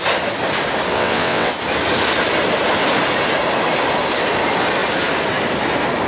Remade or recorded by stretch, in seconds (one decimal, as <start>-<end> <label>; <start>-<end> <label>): 0.0-0.9 recorded; 0.9-1.5 remade; 1.5-6.1 recorded